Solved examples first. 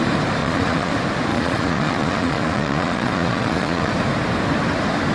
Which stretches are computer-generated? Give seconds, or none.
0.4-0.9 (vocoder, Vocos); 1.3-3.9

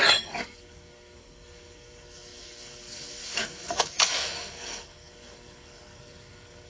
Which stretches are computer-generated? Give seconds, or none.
0.0-6.7 (codec, SNAC)